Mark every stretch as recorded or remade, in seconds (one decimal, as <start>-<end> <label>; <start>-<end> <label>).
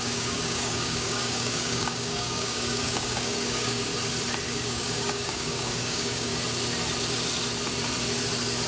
0.0-3.9 remade; 3.9-4.5 recorded; 4.5-6.3 remade; 6.3-8.7 recorded